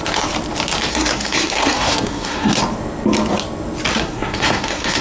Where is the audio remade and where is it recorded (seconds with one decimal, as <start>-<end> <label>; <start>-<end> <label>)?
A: 0.0-0.9 recorded; 0.9-2.6 remade; 2.6-3.9 recorded; 3.9-5.0 remade